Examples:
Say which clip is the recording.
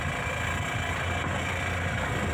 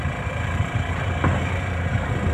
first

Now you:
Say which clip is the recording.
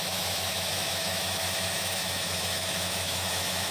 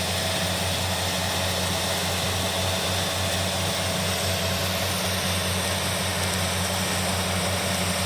second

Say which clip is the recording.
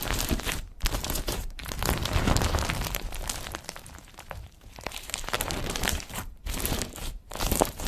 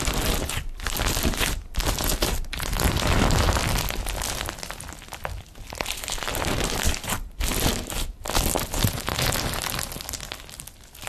second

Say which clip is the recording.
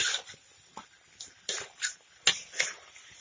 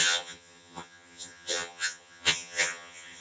first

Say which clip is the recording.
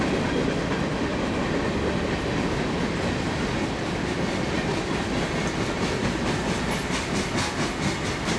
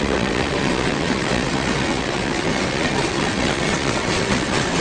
first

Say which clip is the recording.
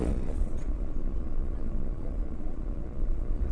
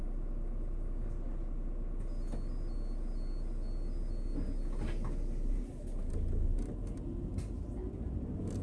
second